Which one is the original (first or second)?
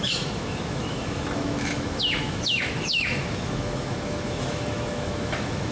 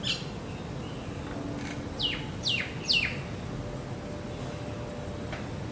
second